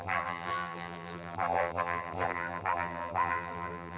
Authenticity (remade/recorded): remade